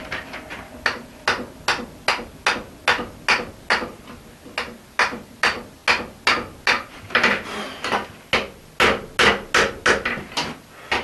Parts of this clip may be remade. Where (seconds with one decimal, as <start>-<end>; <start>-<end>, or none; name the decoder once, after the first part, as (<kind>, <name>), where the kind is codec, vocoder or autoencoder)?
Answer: none